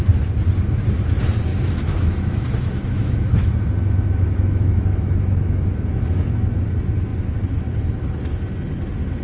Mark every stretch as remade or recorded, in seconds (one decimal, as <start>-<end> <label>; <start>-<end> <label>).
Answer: 0.0-1.5 recorded; 1.5-6.6 remade; 6.6-9.2 recorded